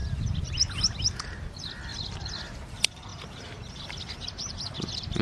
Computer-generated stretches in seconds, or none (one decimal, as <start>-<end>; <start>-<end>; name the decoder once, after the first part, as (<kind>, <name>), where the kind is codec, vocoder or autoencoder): 0.0-1.9 (vocoder, BigVGAN v2); 2.7-3.1; 3.7-5.2